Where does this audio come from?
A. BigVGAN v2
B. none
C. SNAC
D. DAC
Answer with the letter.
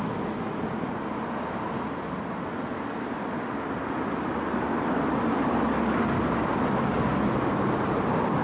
B